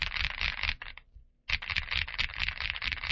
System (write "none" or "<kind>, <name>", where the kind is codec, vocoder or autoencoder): none